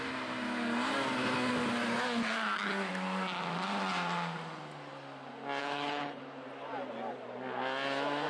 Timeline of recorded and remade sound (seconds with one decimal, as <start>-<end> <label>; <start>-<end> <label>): 0.0-5.6 recorded; 5.6-6.2 remade; 6.2-8.3 recorded